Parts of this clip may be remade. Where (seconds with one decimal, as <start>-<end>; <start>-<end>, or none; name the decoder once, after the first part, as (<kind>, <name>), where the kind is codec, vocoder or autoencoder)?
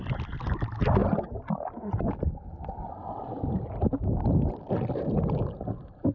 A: none